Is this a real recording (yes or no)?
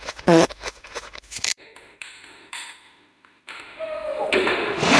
no